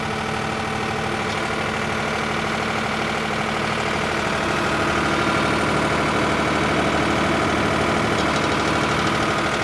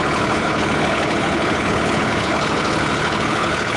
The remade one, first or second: second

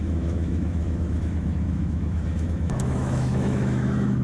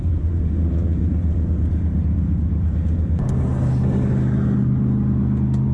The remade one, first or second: first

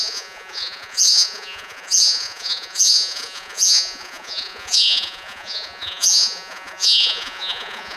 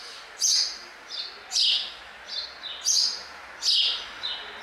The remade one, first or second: first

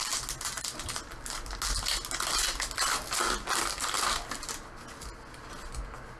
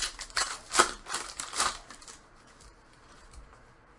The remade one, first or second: second